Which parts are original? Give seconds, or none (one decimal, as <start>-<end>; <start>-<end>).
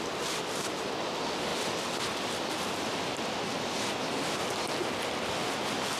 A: 0.0-6.0